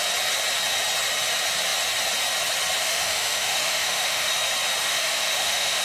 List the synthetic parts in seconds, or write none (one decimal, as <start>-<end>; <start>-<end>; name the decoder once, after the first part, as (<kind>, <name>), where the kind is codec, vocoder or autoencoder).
2.8-4.3 (autoencoder, DAC-VAE); 4.8-5.8